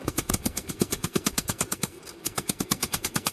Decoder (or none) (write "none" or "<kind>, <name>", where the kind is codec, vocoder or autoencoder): codec, SNAC